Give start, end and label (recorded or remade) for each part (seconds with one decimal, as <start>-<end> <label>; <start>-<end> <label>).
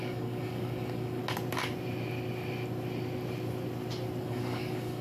0.0-1.2 remade; 1.2-4.2 recorded; 4.2-5.0 remade